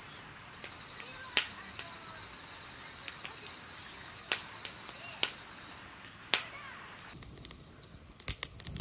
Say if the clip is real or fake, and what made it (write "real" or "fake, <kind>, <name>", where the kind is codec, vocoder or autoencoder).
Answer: real